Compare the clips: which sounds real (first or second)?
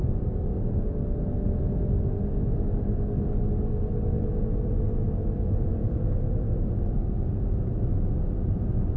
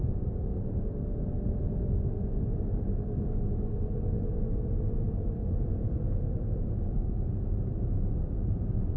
first